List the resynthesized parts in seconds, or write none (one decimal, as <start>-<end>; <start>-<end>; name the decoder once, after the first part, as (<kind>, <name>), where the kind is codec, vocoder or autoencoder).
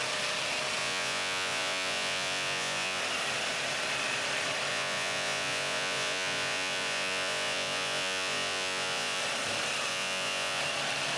0.8-3.0 (vocoder, Vocos); 4.7-9.2; 9.9-10.6